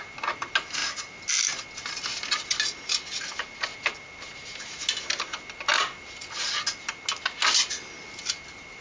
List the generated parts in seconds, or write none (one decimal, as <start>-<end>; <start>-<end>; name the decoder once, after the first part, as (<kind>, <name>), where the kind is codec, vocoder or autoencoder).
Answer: none